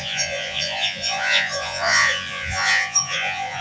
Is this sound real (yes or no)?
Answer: no